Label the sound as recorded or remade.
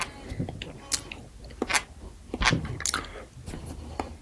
recorded